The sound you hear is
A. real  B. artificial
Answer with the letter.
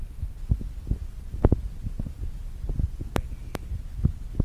A